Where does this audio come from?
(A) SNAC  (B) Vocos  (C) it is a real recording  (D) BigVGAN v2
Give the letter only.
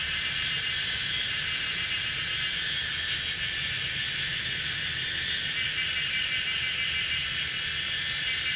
C